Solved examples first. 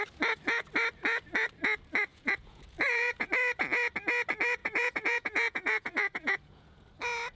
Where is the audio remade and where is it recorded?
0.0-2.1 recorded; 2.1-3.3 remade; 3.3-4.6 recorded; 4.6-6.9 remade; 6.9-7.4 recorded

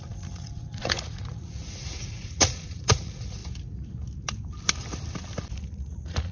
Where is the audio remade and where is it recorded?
0.0-3.4 remade; 3.4-5.5 recorded; 5.5-6.3 remade

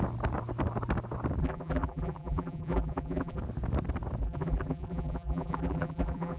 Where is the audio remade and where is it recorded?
0.0-1.4 recorded; 1.4-3.4 remade; 3.4-4.2 recorded; 4.2-6.4 remade